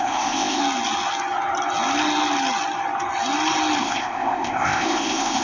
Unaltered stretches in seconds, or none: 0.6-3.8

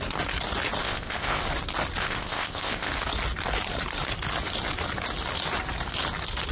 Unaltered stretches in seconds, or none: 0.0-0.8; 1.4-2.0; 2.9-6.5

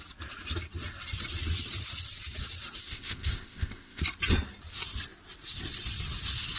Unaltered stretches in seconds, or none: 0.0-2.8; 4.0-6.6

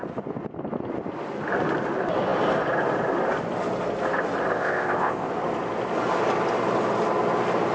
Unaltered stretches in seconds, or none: 0.0-4.5; 5.3-7.7

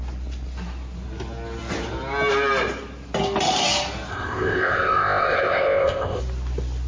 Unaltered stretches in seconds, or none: 0.0-4.1; 6.2-6.9

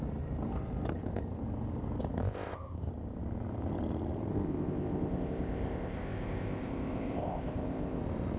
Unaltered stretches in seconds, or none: 0.0-2.2; 2.9-4.3; 8.0-8.4